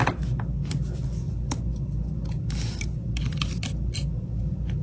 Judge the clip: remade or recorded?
recorded